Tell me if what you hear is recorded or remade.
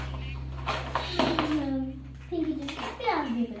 recorded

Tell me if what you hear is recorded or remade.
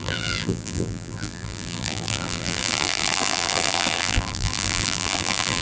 remade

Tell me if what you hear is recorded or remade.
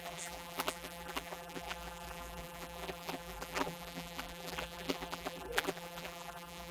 remade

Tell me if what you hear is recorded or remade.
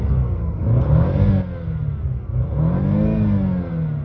recorded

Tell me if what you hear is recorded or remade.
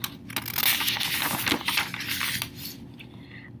recorded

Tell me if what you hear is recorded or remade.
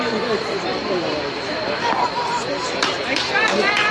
remade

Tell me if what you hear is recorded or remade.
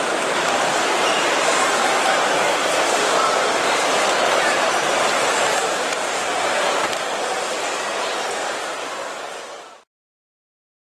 remade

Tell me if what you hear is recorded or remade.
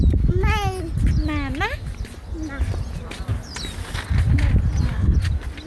recorded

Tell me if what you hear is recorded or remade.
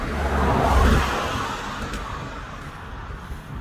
recorded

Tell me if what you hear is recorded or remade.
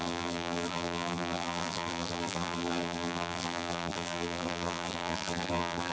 remade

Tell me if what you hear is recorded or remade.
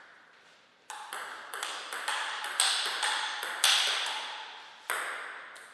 recorded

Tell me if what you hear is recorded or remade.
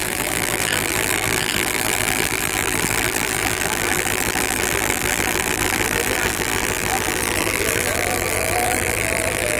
remade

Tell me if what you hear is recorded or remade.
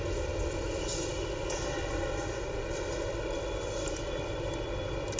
recorded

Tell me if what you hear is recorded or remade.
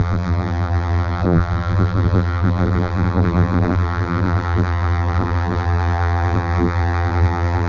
remade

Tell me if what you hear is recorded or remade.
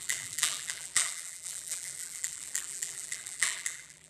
remade